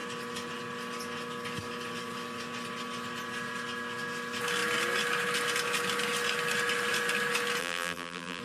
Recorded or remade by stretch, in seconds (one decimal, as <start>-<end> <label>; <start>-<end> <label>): 0.0-7.6 recorded; 7.6-8.4 remade